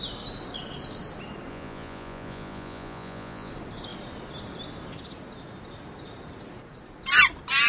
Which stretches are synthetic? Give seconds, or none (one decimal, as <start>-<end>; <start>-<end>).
1.5-3.5